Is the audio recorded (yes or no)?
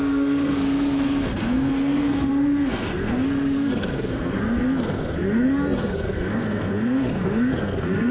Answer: no